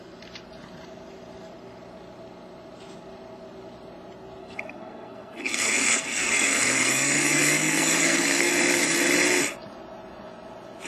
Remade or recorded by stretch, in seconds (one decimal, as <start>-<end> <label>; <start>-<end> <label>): 0.0-4.4 recorded; 4.4-8.5 remade; 8.5-10.9 recorded